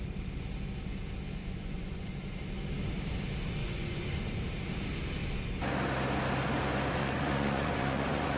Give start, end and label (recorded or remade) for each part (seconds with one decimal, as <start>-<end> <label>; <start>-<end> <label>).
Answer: 0.0-1.4 recorded; 1.4-2.1 remade; 2.1-3.6 recorded; 3.6-4.2 remade; 4.2-7.0 recorded; 7.0-8.4 remade